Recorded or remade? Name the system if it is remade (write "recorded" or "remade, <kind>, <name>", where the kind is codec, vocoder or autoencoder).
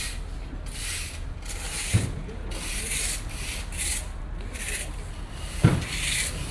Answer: recorded